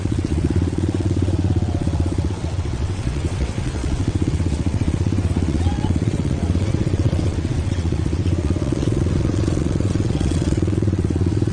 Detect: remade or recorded remade